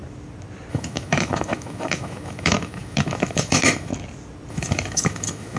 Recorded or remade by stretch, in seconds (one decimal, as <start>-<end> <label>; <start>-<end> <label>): 0.0-0.7 recorded; 0.7-3.9 remade; 3.9-4.5 recorded; 4.5-5.6 remade